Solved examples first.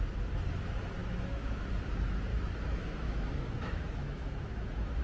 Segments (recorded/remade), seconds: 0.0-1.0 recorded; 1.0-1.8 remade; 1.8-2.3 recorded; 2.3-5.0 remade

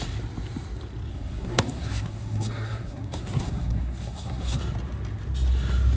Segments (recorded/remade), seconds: 0.0-1.1 recorded; 1.1-4.6 remade; 4.6-6.0 recorded

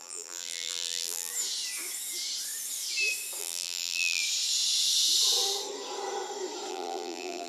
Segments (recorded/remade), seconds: 0.0-1.3 remade; 1.3-3.4 recorded; 3.4-4.2 remade; 4.2-6.7 recorded; 6.7-7.5 remade

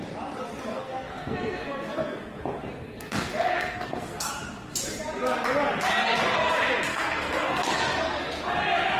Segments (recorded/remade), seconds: 0.0-0.7 recorded; 0.7-2.4 remade; 2.4-2.8 recorded; 2.8-4.3 remade; 4.3-6.9 recorded; 6.9-7.8 remade; 7.8-9.0 recorded

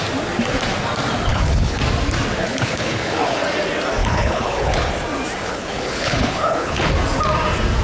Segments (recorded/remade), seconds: 0.0-1.3 recorded; 1.3-1.8 remade; 1.8-2.4 recorded; 2.4-3.4 remade; 3.4-4.0 recorded; 4.0-4.9 remade; 4.9-5.4 recorded; 5.4-6.9 remade; 6.9-7.8 recorded